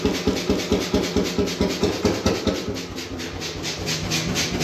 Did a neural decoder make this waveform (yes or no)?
no